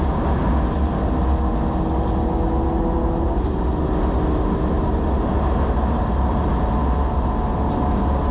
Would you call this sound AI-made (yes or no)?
no